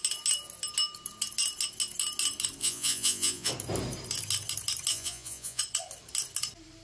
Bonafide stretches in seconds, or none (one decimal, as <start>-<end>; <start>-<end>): 0.0-2.6; 3.5-4.9; 5.6-6.8